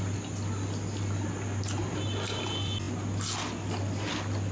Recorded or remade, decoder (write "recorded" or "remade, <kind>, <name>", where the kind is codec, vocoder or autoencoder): recorded